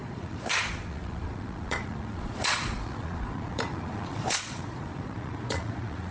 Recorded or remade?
remade